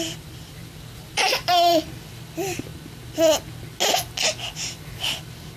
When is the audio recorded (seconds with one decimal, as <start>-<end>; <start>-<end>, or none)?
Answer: 2.7-5.6